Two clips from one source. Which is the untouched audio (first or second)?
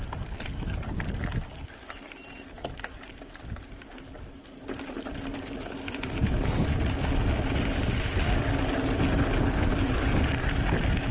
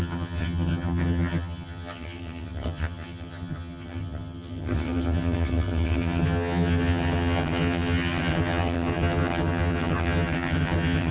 first